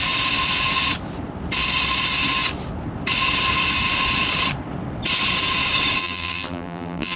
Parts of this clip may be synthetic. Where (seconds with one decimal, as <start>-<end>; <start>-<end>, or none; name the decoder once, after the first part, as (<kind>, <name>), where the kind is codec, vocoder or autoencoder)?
6.0-7.2 (vocoder, BigVGAN v2)